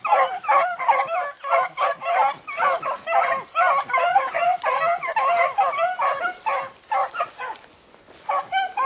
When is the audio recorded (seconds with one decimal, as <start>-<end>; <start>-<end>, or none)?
0.0-4.1; 4.6-7.0; 8.3-8.9